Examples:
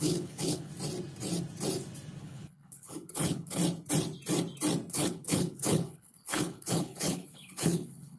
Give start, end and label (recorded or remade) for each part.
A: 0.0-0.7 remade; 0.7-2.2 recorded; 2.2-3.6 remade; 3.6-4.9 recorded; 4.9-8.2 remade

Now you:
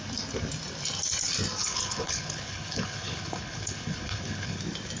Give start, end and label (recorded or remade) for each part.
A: 0.0-1.6 recorded; 1.6-4.6 remade; 4.6-5.0 recorded

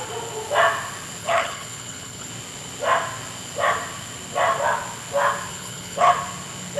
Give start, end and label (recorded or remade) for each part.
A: 0.0-1.2 recorded; 1.2-2.3 remade; 2.3-5.5 recorded; 5.5-6.1 remade; 6.1-6.8 recorded

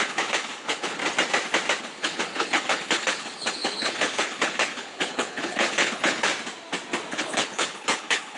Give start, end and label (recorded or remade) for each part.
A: 0.0-1.0 remade; 1.0-1.8 recorded; 1.8-6.3 remade; 6.3-7.1 recorded; 7.1-8.4 remade

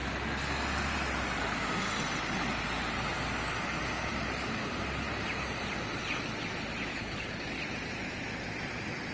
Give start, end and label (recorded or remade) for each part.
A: 0.0-6.9 recorded; 6.9-7.6 remade; 7.6-9.1 recorded